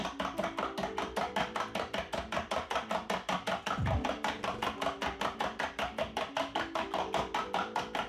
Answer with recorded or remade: recorded